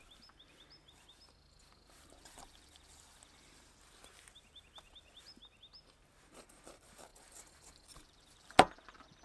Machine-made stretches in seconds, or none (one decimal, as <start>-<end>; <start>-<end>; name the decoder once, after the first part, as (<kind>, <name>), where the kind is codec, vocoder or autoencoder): none